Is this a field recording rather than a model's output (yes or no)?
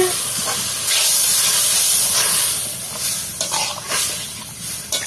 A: yes